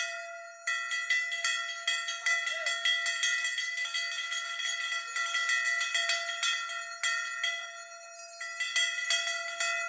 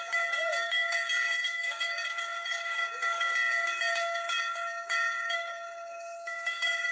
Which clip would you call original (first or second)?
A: first